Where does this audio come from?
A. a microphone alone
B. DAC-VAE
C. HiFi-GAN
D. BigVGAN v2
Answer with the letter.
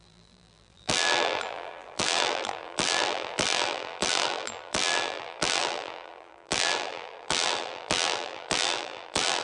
D